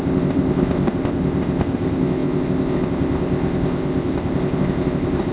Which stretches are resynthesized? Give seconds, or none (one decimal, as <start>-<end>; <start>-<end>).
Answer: 0.0-5.3